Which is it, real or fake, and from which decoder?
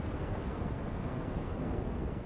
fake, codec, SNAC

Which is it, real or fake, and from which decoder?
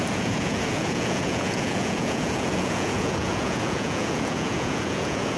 fake, vocoder, Vocos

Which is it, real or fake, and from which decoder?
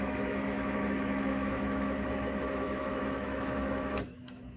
fake, autoencoder, DAC-VAE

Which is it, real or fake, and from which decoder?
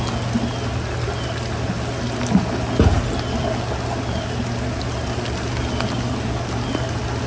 real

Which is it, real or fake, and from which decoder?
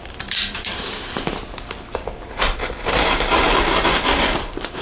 fake, vocoder, BigVGAN v2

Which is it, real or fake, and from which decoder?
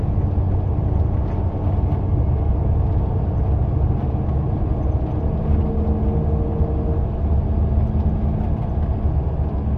real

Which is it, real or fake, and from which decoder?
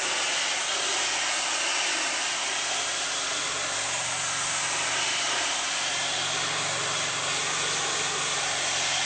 real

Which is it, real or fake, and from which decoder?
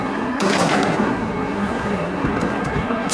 fake, codec, SNAC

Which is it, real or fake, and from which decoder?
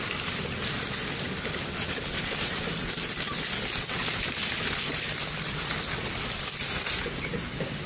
real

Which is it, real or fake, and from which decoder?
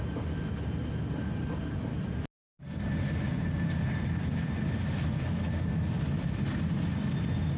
real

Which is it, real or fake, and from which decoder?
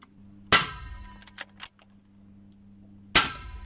real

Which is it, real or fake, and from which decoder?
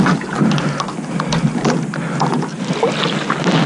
real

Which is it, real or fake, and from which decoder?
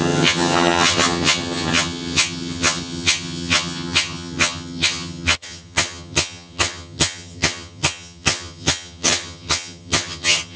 fake, vocoder, HiFi-GAN